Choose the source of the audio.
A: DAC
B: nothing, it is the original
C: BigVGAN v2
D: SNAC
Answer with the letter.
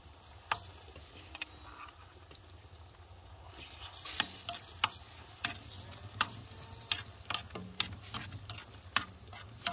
B